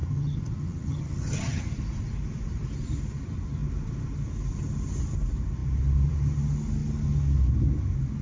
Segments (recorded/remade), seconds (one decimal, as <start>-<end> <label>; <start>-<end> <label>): 0.0-1.6 remade; 1.6-8.2 recorded